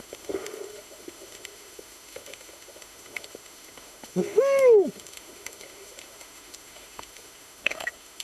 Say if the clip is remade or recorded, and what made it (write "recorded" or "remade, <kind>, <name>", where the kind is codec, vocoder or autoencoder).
remade, autoencoder, DAC-VAE